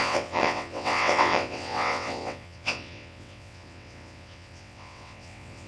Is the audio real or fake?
fake